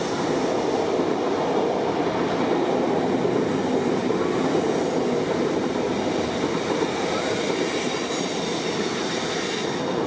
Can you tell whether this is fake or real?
real